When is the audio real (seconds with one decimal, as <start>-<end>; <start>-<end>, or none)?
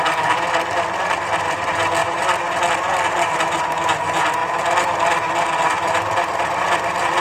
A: 0.0-2.0; 2.7-7.2